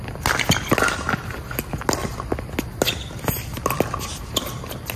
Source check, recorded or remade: recorded